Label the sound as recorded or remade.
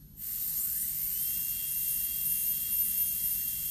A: recorded